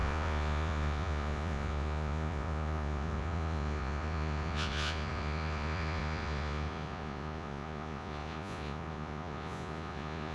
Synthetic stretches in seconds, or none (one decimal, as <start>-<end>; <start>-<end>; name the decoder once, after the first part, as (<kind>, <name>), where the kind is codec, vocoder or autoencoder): 0.0-10.3 (vocoder, Vocos)